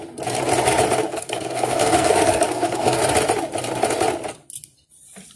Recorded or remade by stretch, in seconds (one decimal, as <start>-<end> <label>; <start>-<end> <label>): 0.0-1.1 recorded; 1.1-3.0 remade; 3.0-5.4 recorded